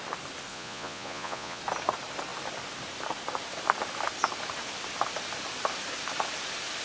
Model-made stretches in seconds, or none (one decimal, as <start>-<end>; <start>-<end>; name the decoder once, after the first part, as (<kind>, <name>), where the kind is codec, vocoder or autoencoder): 0.5-1.6 (vocoder, Vocos)